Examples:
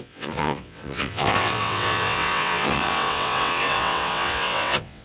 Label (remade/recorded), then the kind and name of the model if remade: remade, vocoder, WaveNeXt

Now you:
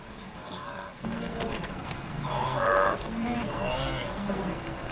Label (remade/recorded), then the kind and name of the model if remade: remade, codec, SNAC